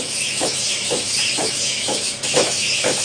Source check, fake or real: fake